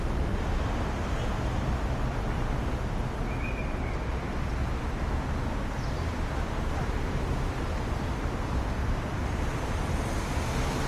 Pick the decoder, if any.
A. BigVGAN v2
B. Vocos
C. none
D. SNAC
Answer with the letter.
C